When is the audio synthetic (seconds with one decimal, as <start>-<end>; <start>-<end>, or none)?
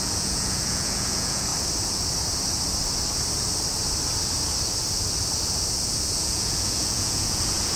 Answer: 0.0-1.5; 6.2-7.8